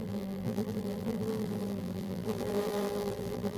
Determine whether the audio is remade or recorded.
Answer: remade